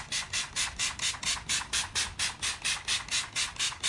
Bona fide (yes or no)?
yes